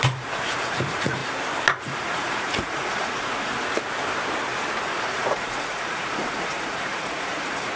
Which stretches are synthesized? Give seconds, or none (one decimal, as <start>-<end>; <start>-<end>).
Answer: 0.0-1.2; 1.8-3.5; 4.8-7.8